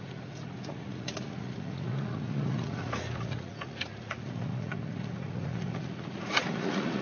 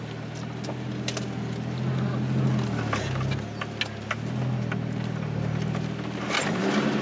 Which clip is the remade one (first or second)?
first